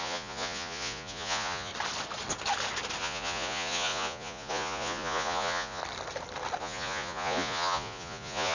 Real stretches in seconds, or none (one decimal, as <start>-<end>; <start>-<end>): 1.7-3.0; 5.8-6.6